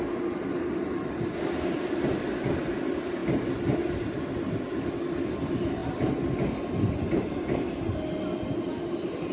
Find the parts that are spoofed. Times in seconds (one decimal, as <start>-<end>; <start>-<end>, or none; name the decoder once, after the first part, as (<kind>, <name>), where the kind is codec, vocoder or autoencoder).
none